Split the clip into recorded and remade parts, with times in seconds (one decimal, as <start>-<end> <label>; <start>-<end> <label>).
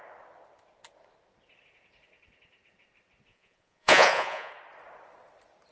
0.0-3.3 recorded; 3.3-4.5 remade; 4.5-5.7 recorded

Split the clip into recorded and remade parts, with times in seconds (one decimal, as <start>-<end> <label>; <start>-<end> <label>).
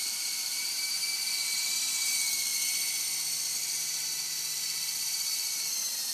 0.0-2.5 remade; 2.5-3.5 recorded; 3.5-6.1 remade